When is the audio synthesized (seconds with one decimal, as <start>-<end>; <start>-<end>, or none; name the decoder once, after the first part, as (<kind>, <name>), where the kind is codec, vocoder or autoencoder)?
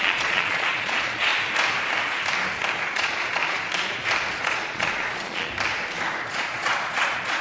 0.0-1.3 (vocoder, Vocos); 2.9-3.4; 4.4-5.5; 6.3-7.4